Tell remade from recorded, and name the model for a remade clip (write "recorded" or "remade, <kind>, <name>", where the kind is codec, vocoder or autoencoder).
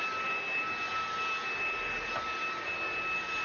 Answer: recorded